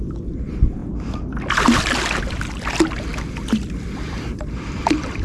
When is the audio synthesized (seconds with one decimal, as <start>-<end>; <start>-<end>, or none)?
0.0-3.1; 3.6-5.2